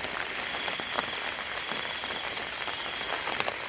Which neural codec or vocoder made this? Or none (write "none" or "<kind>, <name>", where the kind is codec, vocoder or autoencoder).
none